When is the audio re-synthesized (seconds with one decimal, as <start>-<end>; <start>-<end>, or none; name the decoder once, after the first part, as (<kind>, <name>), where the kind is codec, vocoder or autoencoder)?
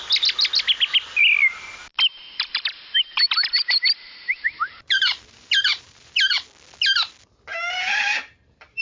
2.1-6.3 (vocoder, BigVGAN v2); 7.5-8.3